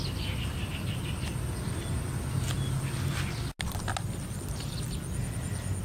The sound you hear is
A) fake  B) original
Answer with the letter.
B